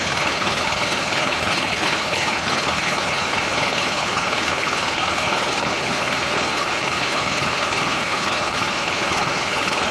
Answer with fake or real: fake